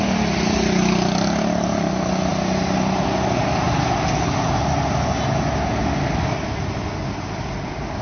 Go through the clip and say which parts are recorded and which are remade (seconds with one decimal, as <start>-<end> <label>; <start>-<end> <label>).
0.0-8.0 recorded